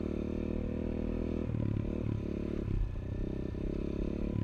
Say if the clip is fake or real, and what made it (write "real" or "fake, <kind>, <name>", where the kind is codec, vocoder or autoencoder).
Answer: real